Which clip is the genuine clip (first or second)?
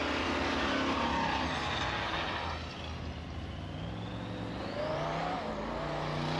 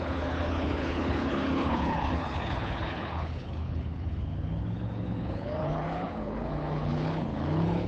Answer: first